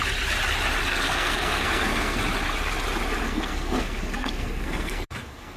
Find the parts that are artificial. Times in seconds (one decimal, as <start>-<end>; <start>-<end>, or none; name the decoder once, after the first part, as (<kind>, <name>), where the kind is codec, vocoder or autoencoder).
0.9-2.2 (codec, SNAC); 3.2-5.6